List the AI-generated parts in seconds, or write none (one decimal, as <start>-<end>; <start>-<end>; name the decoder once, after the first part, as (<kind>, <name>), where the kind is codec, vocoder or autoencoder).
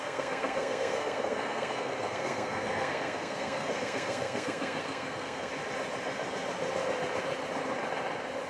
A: 0.0-5.5 (codec, SNAC)